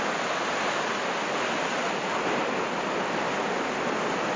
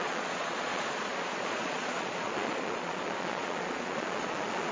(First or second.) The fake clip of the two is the second